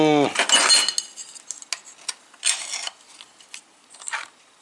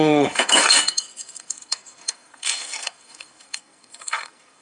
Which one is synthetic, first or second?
second